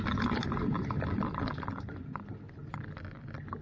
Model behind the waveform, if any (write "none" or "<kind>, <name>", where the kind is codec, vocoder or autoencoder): none